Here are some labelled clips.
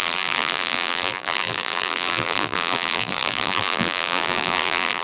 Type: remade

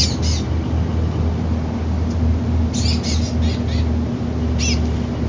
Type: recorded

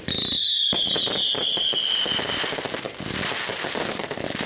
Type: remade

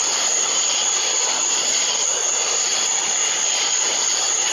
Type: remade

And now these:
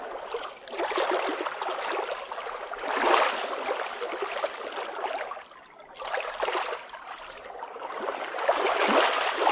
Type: recorded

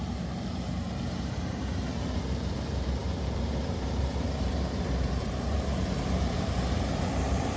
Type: remade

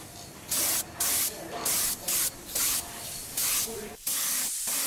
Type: recorded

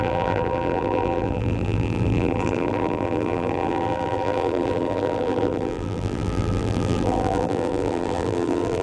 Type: remade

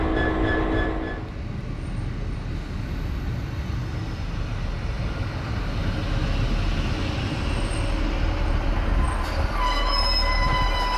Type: recorded